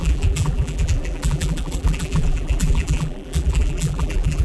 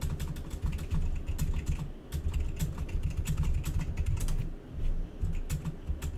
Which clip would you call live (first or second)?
second